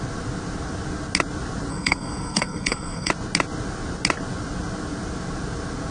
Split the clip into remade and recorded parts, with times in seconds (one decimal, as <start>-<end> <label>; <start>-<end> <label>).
0.0-1.7 recorded; 1.7-3.1 remade; 3.1-5.9 recorded